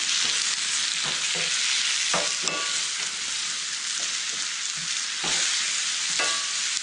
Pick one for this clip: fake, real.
real